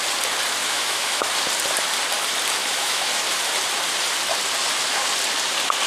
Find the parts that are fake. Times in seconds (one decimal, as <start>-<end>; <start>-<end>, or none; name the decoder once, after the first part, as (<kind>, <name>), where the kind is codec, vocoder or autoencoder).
0.6-1.3 (autoencoder, DAC-VAE); 2.6-3.2

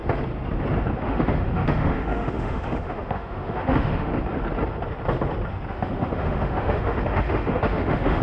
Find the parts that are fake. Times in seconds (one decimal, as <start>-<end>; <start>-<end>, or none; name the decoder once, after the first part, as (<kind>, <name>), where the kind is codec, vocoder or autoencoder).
1.0-4.1 (autoencoder, DAC-VAE); 5.7-8.2

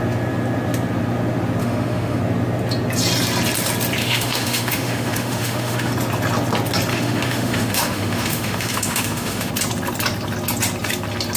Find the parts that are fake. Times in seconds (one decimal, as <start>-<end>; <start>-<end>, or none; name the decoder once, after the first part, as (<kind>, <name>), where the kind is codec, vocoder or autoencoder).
1.6-2.2 (autoencoder, DAC-VAE); 4.0-5.9; 6.9-9.5

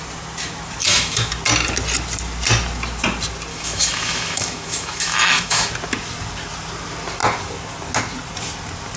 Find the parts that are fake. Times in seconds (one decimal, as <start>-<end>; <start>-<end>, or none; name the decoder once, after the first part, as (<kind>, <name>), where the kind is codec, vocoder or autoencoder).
0.8-1.3 (autoencoder, DAC-VAE); 3.5-5.7